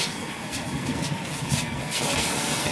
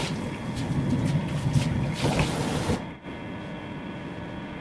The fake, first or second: first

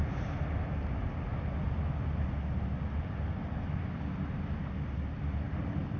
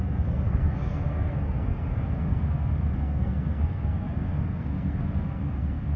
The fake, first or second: second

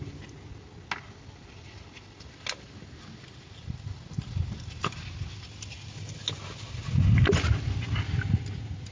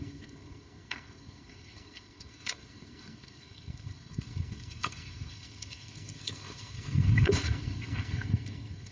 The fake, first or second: second